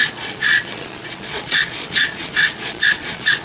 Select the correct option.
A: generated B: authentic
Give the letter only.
A